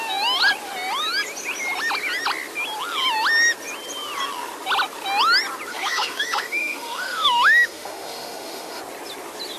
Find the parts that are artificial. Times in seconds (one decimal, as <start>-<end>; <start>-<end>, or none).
5.7-8.8